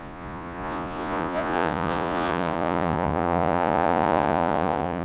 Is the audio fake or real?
fake